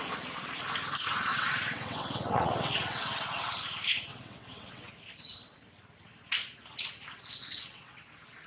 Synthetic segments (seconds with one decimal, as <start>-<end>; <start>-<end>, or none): 1.3-3.6; 4.1-4.9; 7.4-8.0